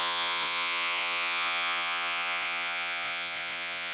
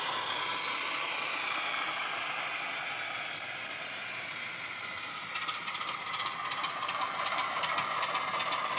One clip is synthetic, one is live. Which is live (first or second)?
second